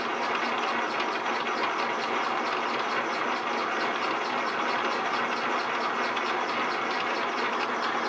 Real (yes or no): yes